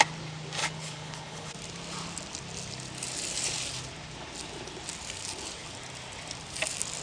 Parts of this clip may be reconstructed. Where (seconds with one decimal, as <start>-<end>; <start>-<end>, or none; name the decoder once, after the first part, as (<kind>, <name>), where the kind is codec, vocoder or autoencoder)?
0.6-1.5 (codec, HILCodec)